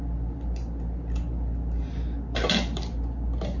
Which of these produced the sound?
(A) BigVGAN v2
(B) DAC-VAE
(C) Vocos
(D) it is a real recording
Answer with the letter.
D